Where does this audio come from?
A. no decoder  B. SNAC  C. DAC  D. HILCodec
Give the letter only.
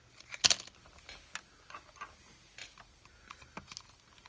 A